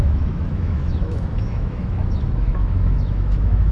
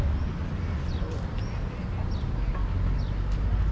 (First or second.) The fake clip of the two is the first